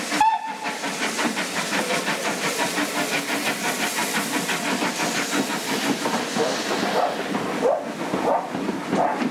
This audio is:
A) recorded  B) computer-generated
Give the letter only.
A